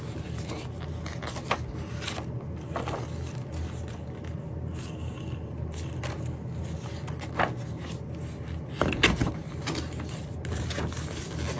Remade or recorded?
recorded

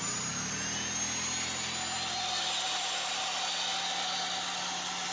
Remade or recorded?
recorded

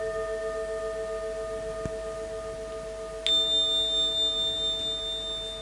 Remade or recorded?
recorded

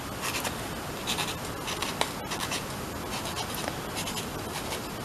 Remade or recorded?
recorded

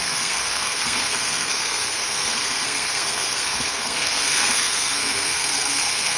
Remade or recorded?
remade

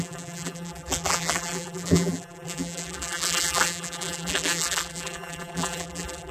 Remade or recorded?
remade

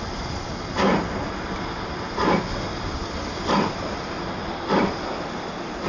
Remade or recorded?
recorded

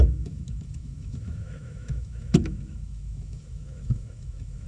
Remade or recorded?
remade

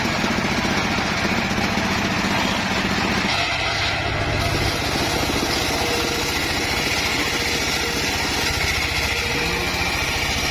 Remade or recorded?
recorded